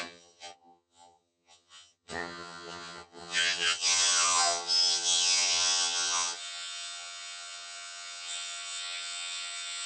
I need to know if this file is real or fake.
fake